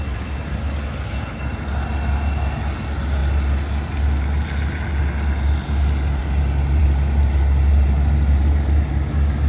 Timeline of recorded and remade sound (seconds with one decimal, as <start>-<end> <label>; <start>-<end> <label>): 0.0-9.5 recorded